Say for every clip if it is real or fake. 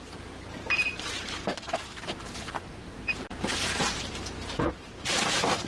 fake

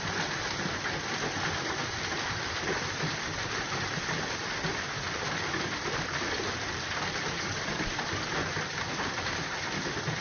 real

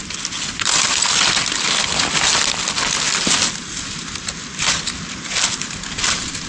real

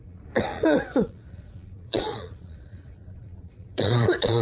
fake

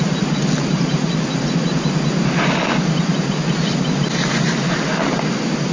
real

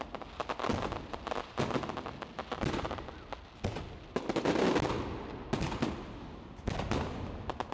real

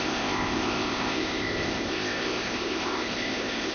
fake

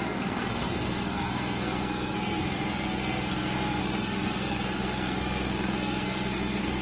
fake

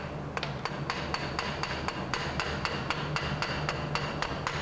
real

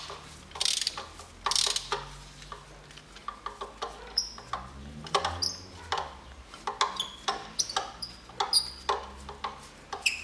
real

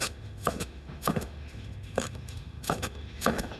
fake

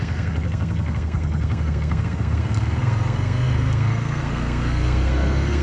fake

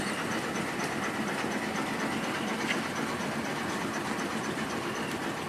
real